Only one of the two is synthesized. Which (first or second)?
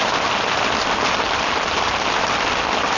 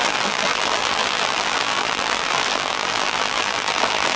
second